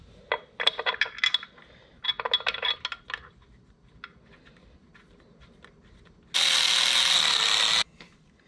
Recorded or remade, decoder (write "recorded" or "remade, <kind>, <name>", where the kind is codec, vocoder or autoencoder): recorded